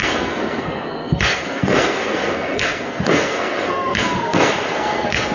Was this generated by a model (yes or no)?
yes